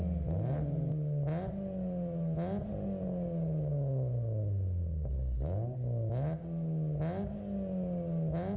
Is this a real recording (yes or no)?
yes